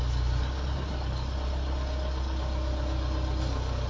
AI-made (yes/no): no